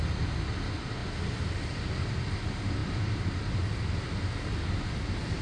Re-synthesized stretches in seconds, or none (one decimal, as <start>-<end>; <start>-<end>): 2.8-3.6